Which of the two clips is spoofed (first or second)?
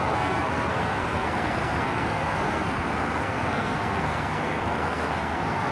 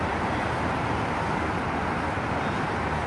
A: first